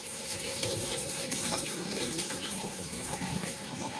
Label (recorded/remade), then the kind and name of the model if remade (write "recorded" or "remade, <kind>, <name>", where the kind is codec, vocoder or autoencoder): remade, codec, SNAC